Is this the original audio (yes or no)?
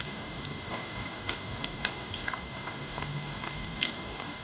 no